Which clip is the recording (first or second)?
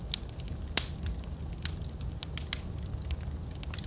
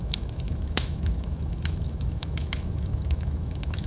first